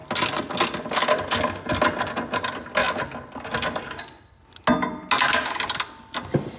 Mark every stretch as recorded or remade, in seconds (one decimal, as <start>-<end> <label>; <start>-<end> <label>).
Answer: 0.0-6.6 recorded